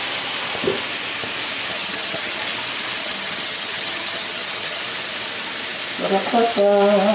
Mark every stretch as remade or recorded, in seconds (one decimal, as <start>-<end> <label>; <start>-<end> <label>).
0.0-1.7 recorded; 1.7-2.4 remade; 2.4-3.0 recorded; 3.0-4.8 remade; 4.8-7.1 recorded